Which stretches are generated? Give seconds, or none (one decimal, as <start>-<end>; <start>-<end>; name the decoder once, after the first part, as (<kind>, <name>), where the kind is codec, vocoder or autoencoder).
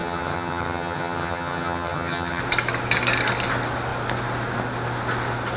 0.0-2.4 (vocoder, HiFi-GAN)